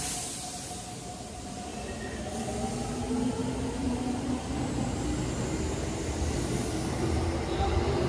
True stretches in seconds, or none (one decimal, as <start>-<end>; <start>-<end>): 0.0-8.1